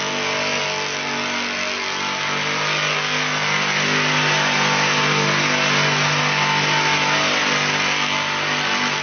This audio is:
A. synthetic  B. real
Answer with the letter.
B